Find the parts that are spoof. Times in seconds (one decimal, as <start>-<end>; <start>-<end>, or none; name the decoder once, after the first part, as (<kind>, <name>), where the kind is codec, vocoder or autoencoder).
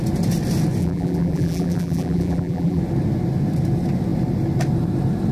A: 0.8-2.8 (vocoder, BigVGAN v2)